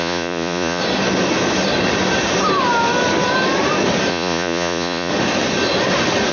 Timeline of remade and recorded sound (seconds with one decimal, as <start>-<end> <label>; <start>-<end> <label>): 0.0-0.8 remade; 0.8-4.1 recorded; 4.1-5.1 remade; 5.1-6.3 recorded